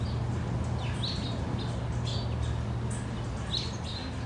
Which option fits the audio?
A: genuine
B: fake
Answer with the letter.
A